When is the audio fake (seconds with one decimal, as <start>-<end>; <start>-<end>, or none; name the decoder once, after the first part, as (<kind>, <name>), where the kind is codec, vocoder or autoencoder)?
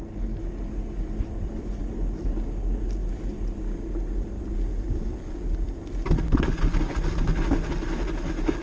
none